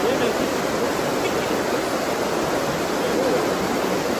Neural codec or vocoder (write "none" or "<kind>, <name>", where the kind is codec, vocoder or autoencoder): none